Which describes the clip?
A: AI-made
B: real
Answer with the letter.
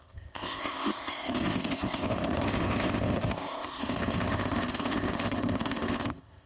A